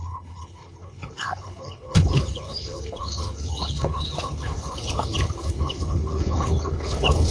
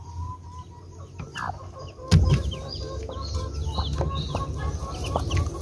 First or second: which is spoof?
first